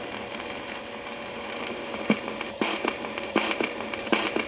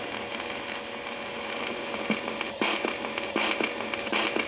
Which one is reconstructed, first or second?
first